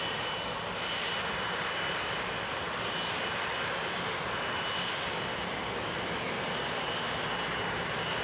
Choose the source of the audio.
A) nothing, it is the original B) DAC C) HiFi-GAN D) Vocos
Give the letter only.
A